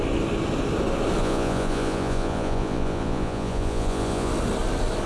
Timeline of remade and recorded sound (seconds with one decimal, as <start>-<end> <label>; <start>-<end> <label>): 0.0-1.2 recorded; 1.2-4.3 remade; 4.3-5.1 recorded

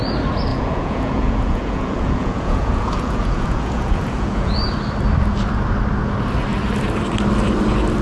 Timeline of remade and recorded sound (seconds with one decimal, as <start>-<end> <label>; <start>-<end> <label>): 0.0-0.5 recorded; 0.5-4.5 remade; 4.5-8.0 recorded